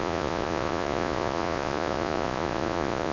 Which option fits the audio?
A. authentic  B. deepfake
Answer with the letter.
B